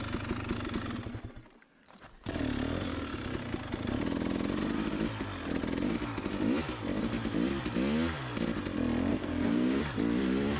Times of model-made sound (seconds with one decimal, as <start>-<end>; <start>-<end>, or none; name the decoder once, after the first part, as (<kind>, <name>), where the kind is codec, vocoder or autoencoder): 9.1-9.8 (codec, SNAC)